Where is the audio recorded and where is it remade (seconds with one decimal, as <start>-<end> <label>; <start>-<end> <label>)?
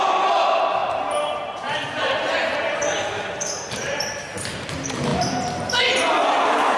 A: 0.0-0.8 recorded; 0.8-4.1 remade; 4.1-6.8 recorded